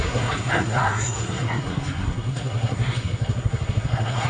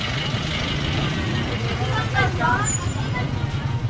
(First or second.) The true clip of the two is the second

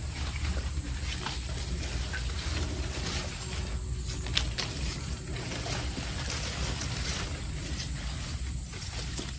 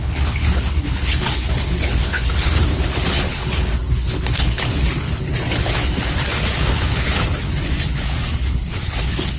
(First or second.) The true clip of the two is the first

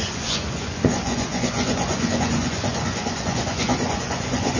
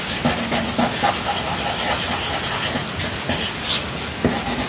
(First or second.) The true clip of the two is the second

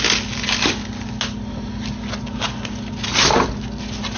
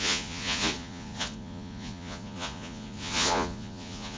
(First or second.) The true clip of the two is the first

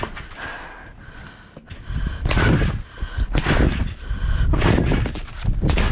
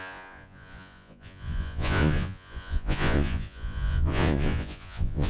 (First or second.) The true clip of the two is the first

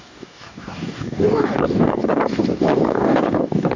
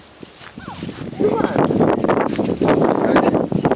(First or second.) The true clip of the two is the second